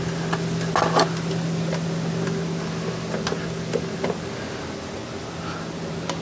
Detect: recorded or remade recorded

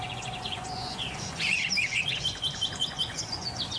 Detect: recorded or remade remade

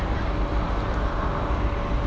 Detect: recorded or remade recorded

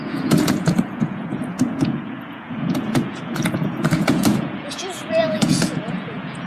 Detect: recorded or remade remade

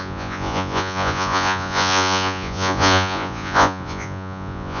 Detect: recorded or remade remade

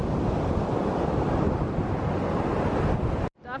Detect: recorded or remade recorded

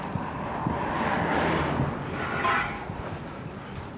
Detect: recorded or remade recorded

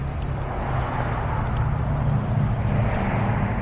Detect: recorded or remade recorded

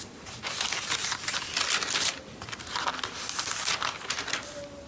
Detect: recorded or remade recorded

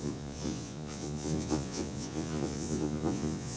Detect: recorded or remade remade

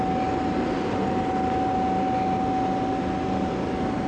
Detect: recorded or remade recorded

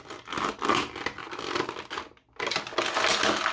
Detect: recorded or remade recorded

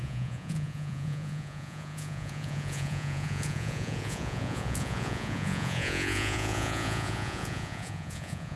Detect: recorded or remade remade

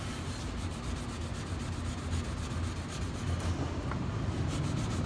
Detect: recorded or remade recorded